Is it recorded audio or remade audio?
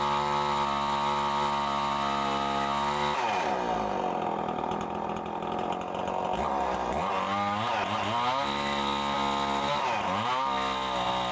recorded